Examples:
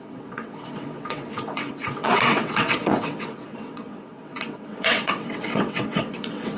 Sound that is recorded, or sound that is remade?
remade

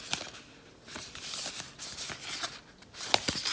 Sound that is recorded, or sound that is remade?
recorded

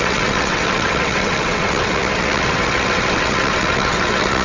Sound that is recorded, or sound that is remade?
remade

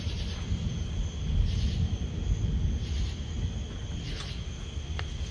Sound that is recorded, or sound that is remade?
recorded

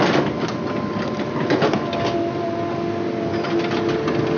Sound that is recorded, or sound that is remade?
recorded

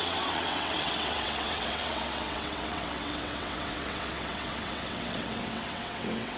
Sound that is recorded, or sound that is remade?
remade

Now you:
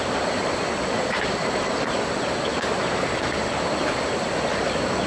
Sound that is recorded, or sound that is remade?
recorded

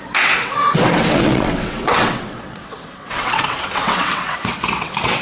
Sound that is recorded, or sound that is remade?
remade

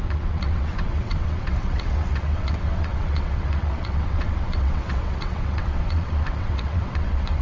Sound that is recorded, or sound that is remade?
remade